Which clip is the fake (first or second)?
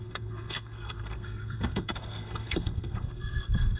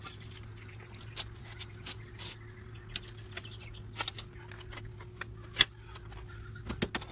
first